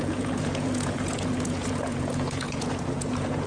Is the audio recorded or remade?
remade